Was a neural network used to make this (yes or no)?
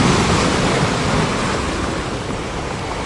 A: no